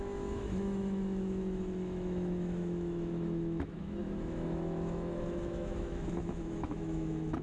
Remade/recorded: remade